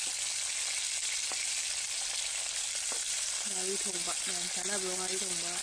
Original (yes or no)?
yes